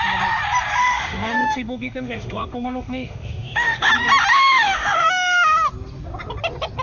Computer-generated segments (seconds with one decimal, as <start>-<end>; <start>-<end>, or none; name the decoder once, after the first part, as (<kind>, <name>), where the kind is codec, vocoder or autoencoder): 0.8-3.9 (autoencoder, DAC-VAE); 4.3-5.7

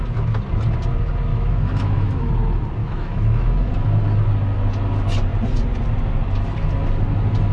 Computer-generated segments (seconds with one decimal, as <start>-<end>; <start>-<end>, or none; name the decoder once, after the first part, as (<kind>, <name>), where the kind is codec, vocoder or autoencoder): 1.3-2.3 (autoencoder, DAC-VAE); 2.8-3.7

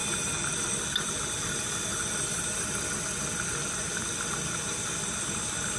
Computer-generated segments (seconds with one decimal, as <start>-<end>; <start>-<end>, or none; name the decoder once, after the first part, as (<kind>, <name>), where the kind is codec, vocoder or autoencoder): none